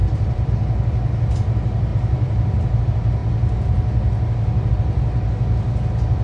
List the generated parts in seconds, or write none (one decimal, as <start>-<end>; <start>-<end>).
0.0-0.5; 1.9-2.8